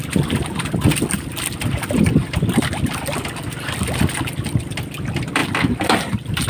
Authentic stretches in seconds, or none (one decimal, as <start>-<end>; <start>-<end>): 0.0-6.5